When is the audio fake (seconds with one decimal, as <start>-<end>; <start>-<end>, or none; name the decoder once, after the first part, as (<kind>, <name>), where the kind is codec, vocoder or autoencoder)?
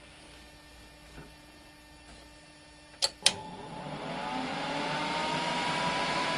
0.7-4.5 (vocoder, BigVGAN v2); 5.2-5.8